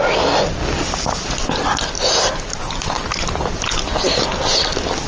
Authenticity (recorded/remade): recorded